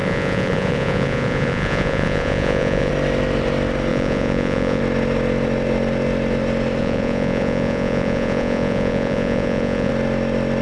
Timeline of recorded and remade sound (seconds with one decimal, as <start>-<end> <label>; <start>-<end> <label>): 0.0-2.9 remade; 2.9-3.9 recorded; 3.9-4.8 remade; 4.8-6.8 recorded; 6.8-9.9 remade; 9.9-10.6 recorded